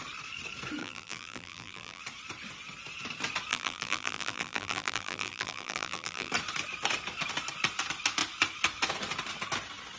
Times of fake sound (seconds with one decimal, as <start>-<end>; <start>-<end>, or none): 0.8-2.0; 3.5-6.3